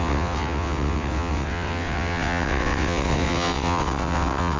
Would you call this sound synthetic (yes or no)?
yes